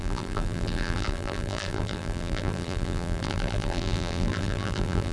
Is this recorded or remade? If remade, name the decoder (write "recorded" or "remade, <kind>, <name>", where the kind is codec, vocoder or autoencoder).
remade, vocoder, BigVGAN v2